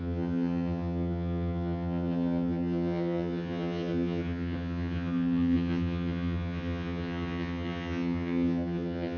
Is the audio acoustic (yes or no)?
no